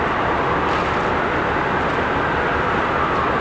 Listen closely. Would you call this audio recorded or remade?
recorded